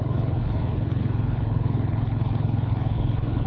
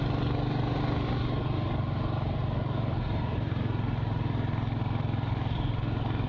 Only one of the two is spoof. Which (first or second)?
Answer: first